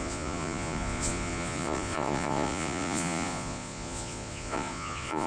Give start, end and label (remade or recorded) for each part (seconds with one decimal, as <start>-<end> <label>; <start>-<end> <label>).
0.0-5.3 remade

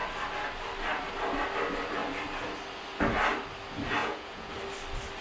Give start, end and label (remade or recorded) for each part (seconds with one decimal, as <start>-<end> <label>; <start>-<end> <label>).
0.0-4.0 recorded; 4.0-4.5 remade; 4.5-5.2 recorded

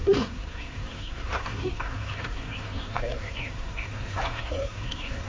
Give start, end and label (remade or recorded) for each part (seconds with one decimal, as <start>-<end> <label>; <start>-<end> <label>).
0.0-5.3 remade

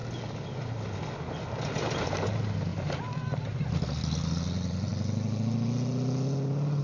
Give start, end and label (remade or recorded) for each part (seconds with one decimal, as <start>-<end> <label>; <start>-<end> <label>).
0.0-6.8 recorded

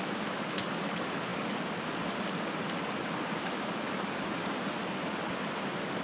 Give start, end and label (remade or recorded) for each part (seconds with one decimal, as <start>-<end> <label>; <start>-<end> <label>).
0.0-6.0 recorded

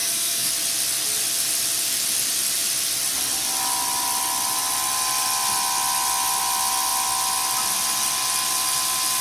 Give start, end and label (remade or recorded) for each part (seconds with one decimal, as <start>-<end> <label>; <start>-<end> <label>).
0.0-0.5 remade; 0.5-9.2 recorded

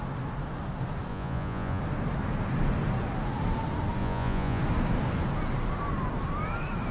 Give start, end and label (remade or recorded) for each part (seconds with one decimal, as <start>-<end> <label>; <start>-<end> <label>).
0.0-1.1 recorded; 1.1-1.8 remade; 1.8-4.0 recorded; 4.0-4.6 remade; 4.6-6.9 recorded

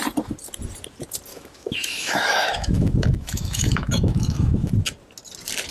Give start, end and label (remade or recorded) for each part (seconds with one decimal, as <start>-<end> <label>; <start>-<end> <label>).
0.0-1.3 recorded; 1.3-4.7 remade; 4.7-5.7 recorded